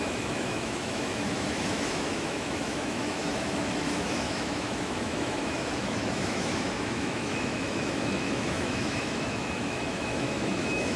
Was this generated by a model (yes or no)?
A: yes